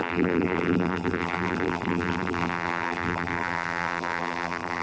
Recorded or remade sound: remade